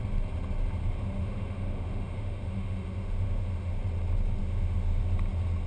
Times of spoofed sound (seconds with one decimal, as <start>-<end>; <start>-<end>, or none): 0.8-3.8; 4.4-5.0